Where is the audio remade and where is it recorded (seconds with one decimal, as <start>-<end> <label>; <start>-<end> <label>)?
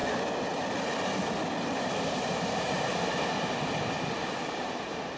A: 0.0-1.8 recorded; 1.8-2.9 remade; 2.9-4.6 recorded; 4.6-5.2 remade